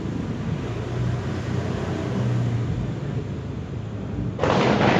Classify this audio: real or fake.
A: real